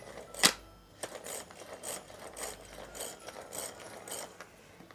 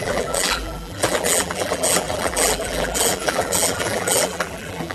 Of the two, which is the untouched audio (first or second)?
first